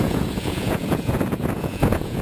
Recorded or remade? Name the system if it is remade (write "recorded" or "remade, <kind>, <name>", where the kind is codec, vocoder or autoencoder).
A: remade, vocoder, Vocos